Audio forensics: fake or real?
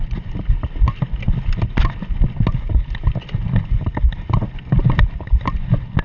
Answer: real